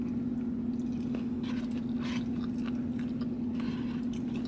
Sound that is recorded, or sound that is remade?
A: recorded